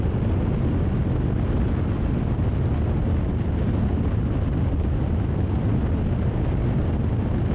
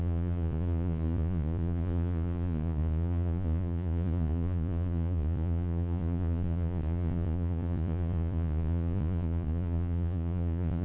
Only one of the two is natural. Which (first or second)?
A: first